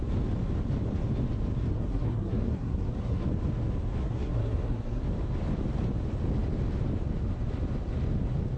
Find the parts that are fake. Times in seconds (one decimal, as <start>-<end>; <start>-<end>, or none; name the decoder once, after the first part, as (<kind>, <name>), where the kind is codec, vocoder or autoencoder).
1.7-3.2 (codec, SNAC); 4.0-5.0